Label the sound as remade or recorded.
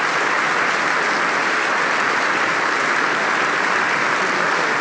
recorded